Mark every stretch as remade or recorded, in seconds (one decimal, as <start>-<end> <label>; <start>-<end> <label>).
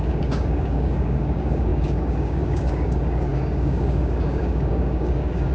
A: 0.0-5.5 remade